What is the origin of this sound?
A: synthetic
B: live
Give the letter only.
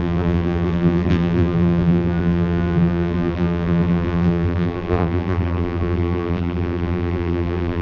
A